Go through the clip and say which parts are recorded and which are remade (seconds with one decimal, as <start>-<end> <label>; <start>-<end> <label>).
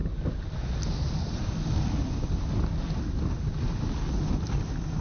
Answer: 0.0-5.0 recorded